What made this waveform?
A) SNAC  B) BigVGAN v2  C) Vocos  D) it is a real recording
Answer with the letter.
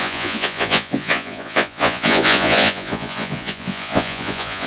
C